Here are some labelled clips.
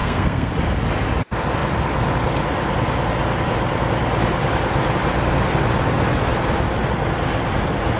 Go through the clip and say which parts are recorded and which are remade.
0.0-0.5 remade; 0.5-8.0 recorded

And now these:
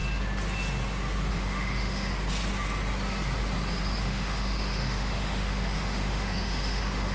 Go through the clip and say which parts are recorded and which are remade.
0.0-1.3 recorded; 1.3-2.1 remade; 2.1-4.0 recorded; 4.0-7.1 remade

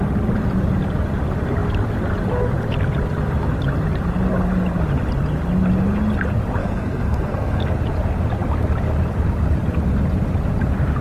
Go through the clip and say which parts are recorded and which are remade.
0.0-6.6 recorded; 6.6-7.6 remade; 7.6-11.0 recorded

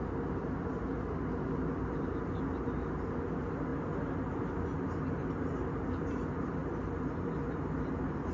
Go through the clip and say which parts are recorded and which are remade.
0.0-8.3 recorded

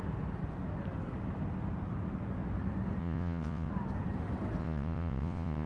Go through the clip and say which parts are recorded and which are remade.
0.0-3.0 recorded; 3.0-3.7 remade; 3.7-4.6 recorded; 4.6-5.7 remade

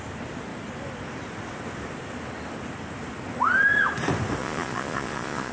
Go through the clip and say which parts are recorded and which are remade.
0.0-4.4 recorded; 4.4-5.5 remade

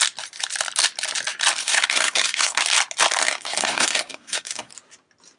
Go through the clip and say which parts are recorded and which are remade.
0.0-1.6 recorded; 1.6-2.6 remade; 2.6-3.2 recorded; 3.2-4.7 remade; 4.7-5.4 recorded